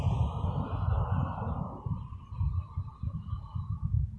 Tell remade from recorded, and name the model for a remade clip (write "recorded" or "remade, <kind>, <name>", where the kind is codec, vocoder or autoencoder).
recorded